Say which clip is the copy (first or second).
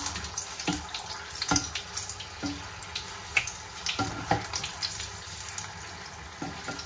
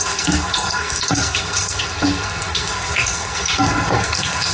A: second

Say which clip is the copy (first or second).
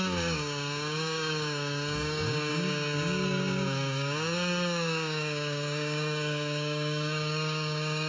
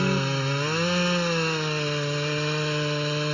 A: first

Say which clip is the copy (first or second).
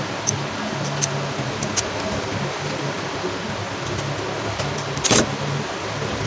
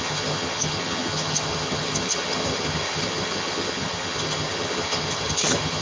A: second